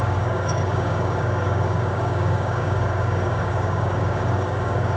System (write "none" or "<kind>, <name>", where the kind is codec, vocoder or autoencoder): codec, DAC